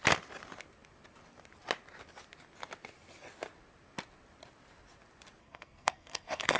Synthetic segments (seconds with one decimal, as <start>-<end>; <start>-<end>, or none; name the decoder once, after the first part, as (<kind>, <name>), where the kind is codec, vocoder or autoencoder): 5.4-6.6 (codec, SNAC)